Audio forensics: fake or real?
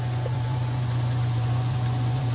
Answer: fake